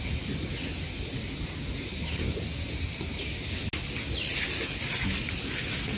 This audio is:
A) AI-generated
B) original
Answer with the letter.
B